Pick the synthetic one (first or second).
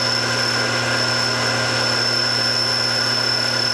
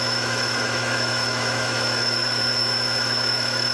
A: second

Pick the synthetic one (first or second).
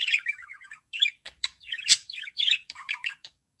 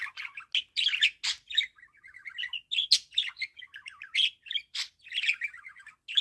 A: first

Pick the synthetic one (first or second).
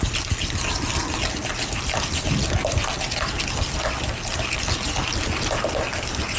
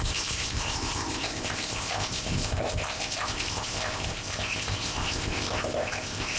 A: second